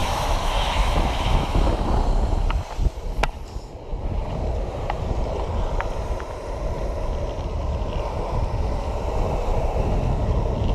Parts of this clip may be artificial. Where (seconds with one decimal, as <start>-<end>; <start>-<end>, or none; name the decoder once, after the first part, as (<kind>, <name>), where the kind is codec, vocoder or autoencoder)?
0.0-1.7 (autoencoder, DAC-VAE)